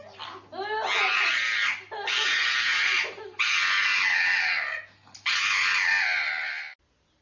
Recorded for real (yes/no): yes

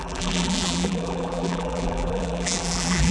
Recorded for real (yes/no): no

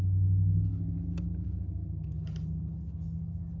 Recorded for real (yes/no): yes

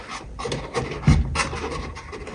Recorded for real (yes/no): yes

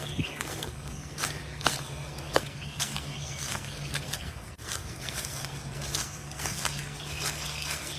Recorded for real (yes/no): no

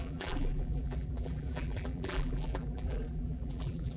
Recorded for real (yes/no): no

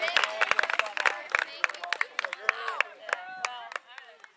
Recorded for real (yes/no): yes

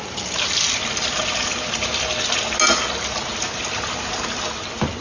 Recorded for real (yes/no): yes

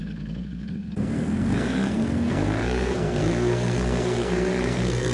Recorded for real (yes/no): no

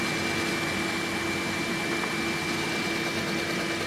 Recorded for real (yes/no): yes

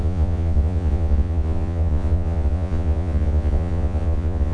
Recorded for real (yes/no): no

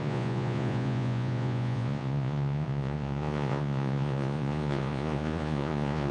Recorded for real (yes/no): no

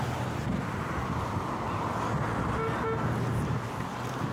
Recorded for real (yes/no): yes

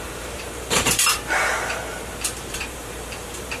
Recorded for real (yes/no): no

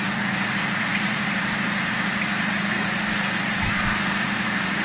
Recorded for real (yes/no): no